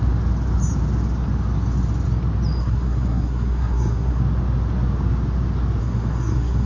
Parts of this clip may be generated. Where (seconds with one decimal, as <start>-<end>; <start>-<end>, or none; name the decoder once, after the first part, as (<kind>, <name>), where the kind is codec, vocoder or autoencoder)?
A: 2.6-4.2 (codec, SNAC); 5.8-6.7